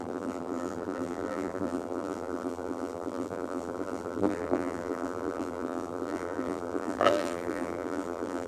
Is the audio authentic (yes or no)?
no